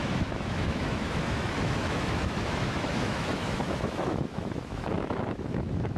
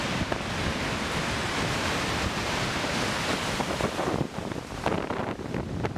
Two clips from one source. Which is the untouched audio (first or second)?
second